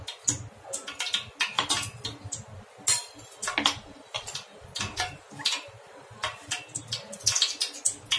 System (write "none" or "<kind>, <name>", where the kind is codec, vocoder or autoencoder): none